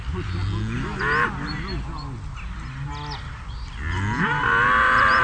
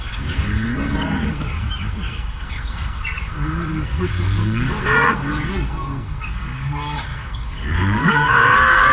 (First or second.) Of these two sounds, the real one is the first